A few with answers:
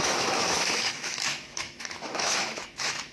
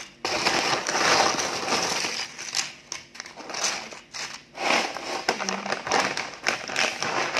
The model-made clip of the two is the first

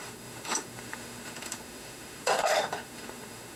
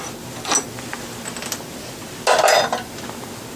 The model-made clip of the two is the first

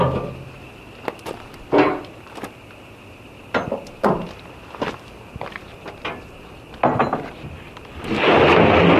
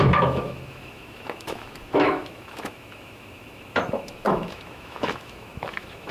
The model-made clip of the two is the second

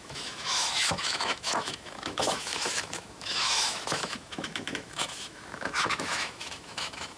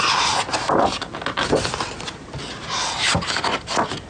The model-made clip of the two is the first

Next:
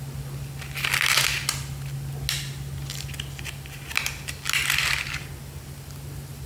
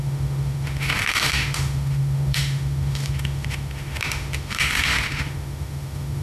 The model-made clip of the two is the second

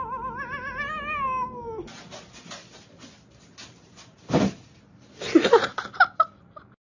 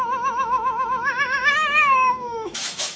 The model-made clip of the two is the second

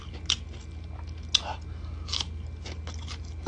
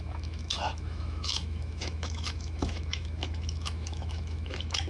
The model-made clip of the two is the second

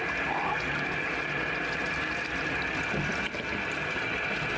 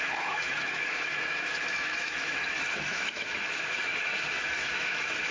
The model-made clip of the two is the second